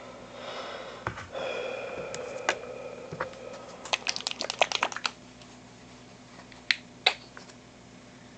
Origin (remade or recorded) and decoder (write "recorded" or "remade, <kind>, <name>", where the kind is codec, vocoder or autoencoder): recorded